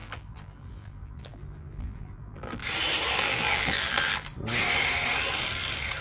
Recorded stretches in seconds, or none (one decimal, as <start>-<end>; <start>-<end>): 2.6-3.2; 4.3-6.0